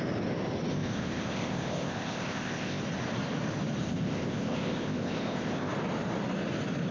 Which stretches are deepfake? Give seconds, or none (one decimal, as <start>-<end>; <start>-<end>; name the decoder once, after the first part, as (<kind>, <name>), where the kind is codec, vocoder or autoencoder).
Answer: 0.7-2.8 (codec, ZipCodec); 3.8-5.7